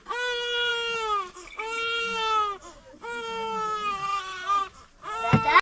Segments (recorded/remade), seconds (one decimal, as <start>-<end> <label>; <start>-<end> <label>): 0.0-5.6 recorded